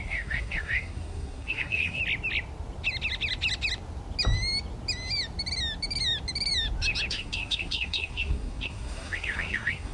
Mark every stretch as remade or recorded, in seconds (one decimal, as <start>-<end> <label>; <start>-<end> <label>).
0.0-2.0 remade; 2.0-7.1 recorded; 7.1-9.9 remade